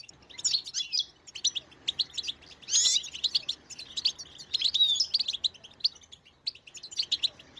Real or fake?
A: real